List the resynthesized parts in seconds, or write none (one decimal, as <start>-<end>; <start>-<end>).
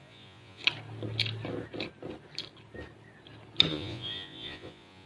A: 0.0-0.6; 3.7-5.1